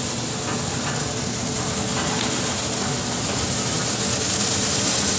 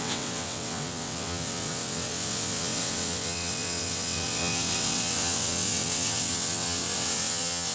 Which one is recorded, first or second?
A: first